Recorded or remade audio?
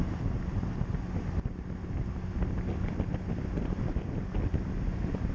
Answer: recorded